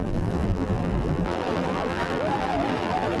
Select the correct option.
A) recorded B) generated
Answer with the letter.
B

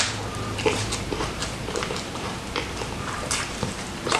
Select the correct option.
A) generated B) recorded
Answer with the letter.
A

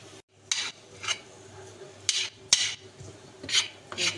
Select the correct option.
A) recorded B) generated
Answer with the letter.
A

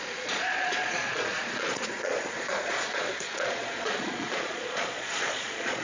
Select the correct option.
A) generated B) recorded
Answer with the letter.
A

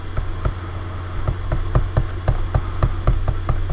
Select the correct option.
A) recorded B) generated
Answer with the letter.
A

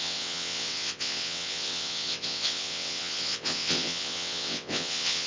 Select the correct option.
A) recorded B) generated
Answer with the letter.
B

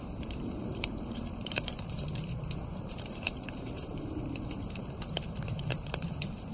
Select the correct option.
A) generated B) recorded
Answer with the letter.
A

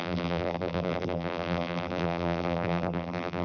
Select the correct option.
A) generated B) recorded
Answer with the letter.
A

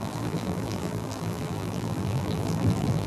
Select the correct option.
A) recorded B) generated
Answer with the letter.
B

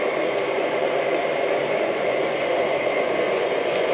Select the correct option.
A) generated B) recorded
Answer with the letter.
A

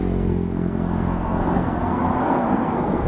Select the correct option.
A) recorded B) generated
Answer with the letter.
B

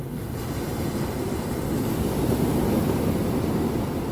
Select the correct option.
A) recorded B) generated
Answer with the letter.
A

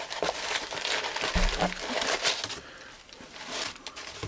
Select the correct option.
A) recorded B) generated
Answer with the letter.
A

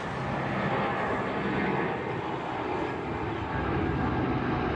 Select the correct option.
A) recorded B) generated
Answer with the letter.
A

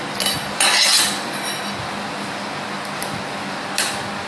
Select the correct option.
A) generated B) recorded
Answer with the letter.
B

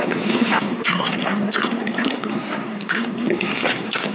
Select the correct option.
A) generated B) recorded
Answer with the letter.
A